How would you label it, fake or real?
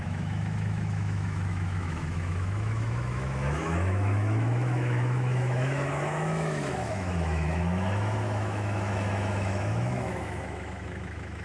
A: fake